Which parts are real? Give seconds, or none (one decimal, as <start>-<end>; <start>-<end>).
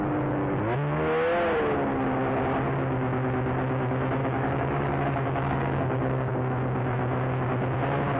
0.0-4.2; 6.3-8.2